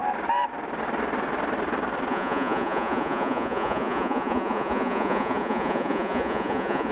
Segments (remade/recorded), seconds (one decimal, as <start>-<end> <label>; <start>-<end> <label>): 0.0-2.1 recorded; 2.1-6.9 remade